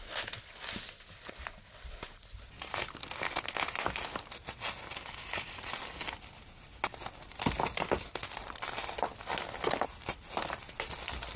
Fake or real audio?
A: real